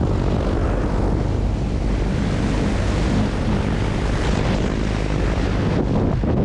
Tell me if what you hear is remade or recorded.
recorded